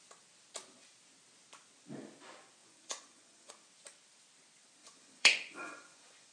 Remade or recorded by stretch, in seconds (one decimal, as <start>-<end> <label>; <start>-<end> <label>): 0.0-2.6 recorded; 2.6-3.5 remade; 3.5-4.8 recorded; 4.8-6.3 remade